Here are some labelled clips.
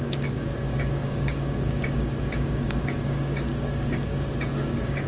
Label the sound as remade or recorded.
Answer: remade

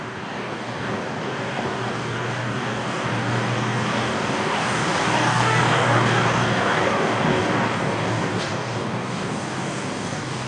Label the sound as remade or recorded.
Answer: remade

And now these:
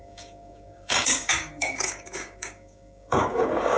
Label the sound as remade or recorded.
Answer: remade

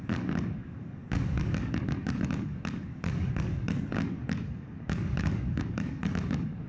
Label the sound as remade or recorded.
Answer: remade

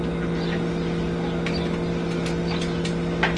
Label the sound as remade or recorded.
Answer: recorded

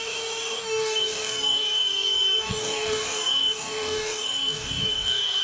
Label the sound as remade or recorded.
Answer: remade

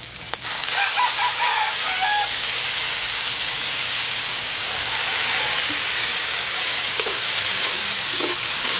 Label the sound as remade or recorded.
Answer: remade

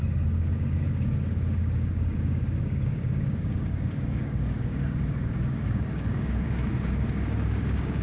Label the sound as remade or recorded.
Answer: remade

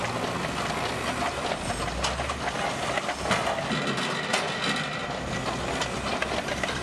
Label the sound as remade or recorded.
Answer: recorded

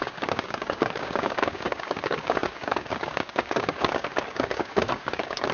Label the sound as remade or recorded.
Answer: remade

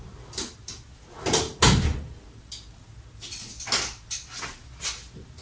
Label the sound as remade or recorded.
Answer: recorded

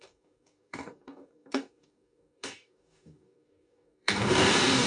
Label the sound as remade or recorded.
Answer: remade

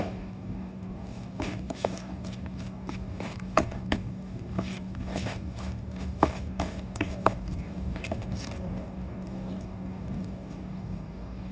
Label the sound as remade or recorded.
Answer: remade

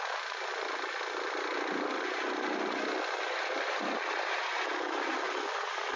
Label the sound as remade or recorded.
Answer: recorded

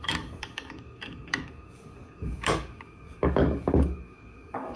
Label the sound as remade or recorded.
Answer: remade